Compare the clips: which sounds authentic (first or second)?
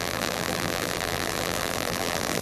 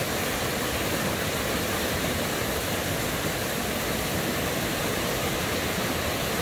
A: second